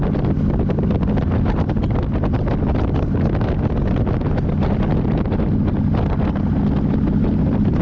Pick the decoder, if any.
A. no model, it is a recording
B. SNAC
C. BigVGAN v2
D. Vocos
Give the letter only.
A